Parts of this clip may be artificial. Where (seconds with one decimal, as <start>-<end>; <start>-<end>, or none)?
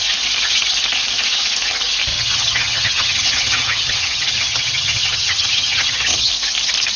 2.1-6.3